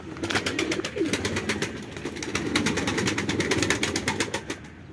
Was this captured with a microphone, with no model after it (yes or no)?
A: yes